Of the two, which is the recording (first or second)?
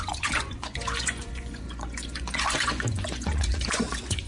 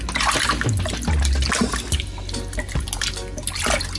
second